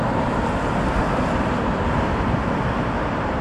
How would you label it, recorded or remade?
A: recorded